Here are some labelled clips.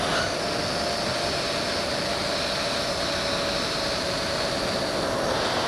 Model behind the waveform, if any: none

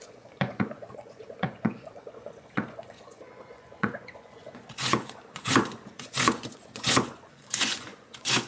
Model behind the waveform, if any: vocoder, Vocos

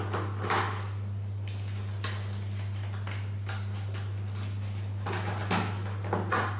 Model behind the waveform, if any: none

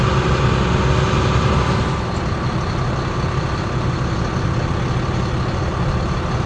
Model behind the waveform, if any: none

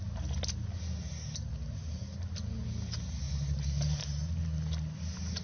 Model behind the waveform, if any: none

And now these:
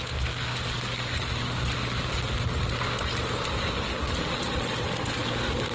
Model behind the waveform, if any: none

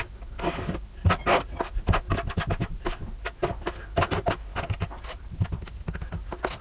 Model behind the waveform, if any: none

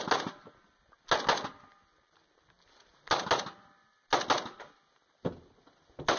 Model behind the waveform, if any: none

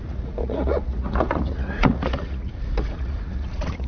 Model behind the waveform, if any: vocoder, Vocos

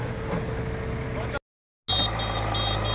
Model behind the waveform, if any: none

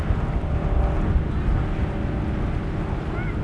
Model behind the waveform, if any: none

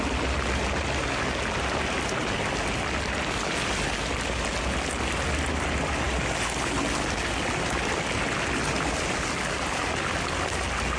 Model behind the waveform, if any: none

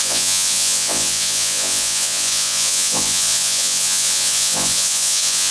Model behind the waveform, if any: vocoder, Vocos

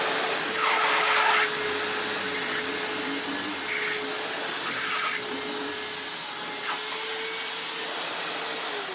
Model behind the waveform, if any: none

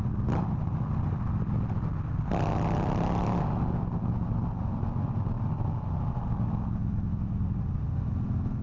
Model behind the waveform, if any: none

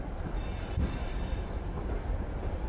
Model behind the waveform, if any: none